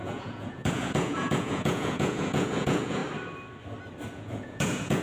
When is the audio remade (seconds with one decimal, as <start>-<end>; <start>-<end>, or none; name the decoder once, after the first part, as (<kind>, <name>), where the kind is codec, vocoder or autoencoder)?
0.0-3.0 (vocoder, Vocos); 4.1-5.0